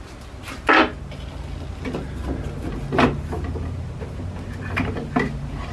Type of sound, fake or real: real